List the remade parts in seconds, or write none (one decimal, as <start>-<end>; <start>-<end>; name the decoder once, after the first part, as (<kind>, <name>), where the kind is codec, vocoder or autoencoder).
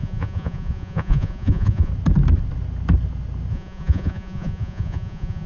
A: 0.0-1.9 (vocoder, Vocos); 3.5-5.5